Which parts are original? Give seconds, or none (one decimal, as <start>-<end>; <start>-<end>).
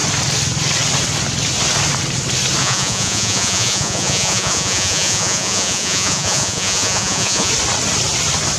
0.0-2.6; 7.5-8.6